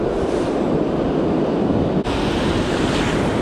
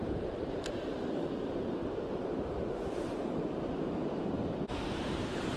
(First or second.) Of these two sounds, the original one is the first